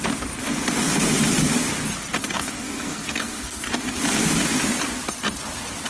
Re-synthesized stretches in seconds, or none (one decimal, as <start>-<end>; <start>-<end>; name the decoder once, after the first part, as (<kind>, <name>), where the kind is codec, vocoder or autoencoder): 2.2-3.7 (codec, SNAC)